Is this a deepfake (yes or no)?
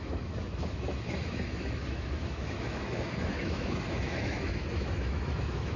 yes